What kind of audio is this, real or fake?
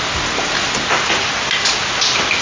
real